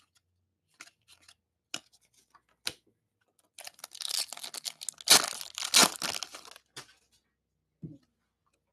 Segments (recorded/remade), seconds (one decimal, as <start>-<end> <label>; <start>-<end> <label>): 0.0-8.7 recorded

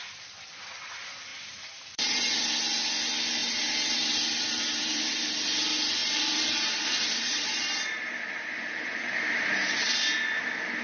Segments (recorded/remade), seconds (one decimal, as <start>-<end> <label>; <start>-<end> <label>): 0.0-1.3 recorded; 1.3-2.4 remade; 2.4-3.4 recorded; 3.4-5.1 remade; 5.1-6.0 recorded; 6.0-9.2 remade; 9.2-10.8 recorded

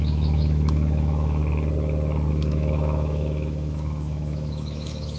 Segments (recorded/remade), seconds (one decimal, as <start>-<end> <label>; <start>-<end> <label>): 0.0-1.4 remade; 1.4-2.3 recorded; 2.3-5.2 remade